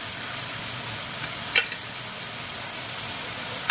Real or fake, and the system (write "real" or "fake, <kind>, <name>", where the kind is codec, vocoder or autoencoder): real